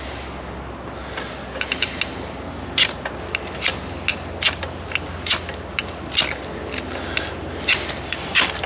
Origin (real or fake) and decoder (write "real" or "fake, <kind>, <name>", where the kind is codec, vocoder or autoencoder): real